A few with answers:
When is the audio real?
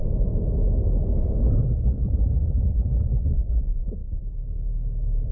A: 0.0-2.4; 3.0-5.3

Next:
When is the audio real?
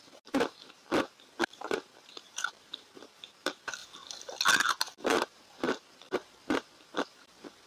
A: 0.8-1.3; 3.8-4.7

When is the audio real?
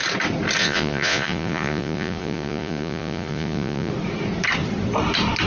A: 0.0-0.6; 3.9-5.5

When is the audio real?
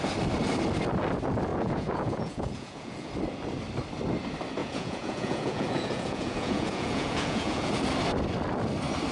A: 0.0-1.5; 3.1-4.6; 7.7-9.1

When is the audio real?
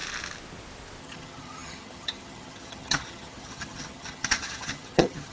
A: 0.0-1.0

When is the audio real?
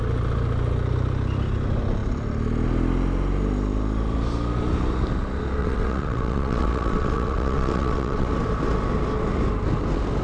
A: 0.0-5.6; 8.3-10.2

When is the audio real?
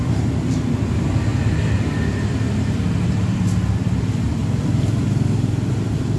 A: 0.0-1.3; 4.0-4.4; 5.1-6.2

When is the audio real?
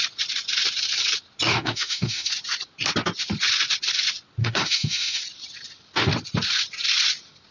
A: 0.0-1.5; 2.3-4.4; 5.2-7.5